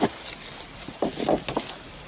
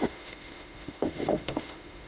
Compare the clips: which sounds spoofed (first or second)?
second